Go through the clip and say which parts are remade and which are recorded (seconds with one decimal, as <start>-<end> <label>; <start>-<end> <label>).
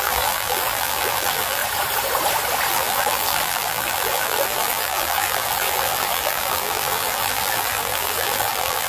0.0-1.6 remade; 1.6-2.7 recorded; 2.7-8.9 remade